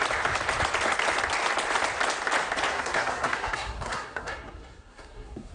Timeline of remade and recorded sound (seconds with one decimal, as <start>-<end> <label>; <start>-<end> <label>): 0.0-2.7 recorded; 2.7-5.5 remade

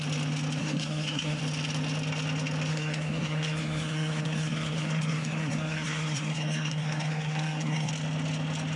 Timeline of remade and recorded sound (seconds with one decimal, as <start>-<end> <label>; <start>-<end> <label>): 0.0-0.6 recorded; 0.6-1.4 remade; 1.4-2.7 recorded; 2.7-7.9 remade; 7.9-8.8 recorded

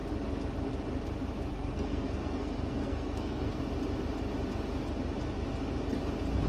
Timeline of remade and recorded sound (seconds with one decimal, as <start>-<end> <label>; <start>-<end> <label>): 0.0-1.5 recorded; 1.5-3.6 remade; 3.6-6.5 recorded

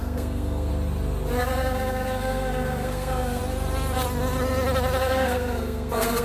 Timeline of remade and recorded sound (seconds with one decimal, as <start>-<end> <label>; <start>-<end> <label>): 0.0-0.7 remade; 0.7-1.4 recorded; 1.4-3.4 remade; 3.4-5.0 recorded; 5.0-6.2 remade

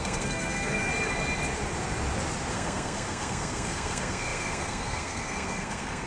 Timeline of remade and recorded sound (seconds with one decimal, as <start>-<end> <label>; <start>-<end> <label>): 0.0-0.9 remade; 0.9-2.5 recorded; 2.5-6.1 remade

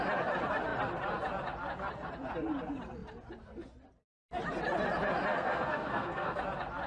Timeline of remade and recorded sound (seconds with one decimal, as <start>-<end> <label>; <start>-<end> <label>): 0.0-5.3 recorded; 5.3-6.4 remade; 6.4-6.9 recorded

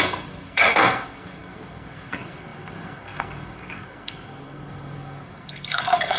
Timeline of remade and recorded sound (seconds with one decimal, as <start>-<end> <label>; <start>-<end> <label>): 0.0-6.2 remade

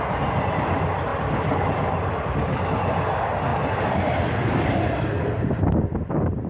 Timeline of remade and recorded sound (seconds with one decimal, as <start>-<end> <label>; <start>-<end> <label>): 0.0-6.5 recorded